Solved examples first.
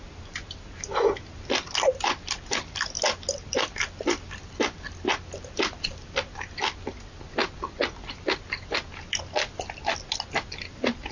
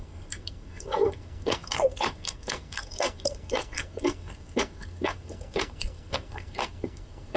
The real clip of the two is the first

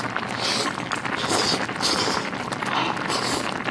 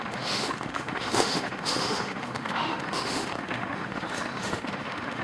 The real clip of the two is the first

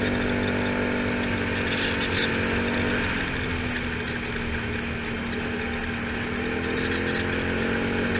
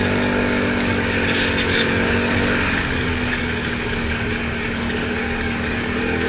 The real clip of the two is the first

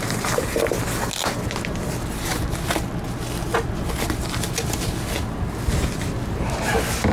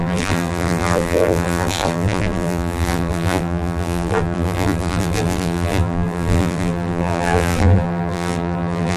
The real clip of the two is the first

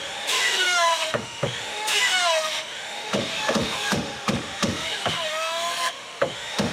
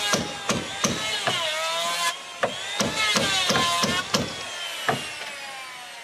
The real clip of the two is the second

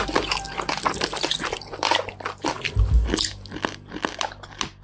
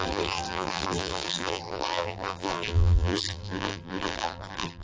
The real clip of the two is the first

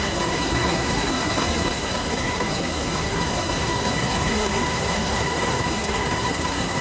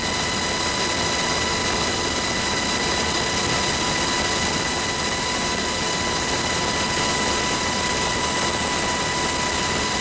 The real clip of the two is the second